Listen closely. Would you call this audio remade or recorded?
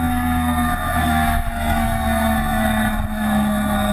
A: remade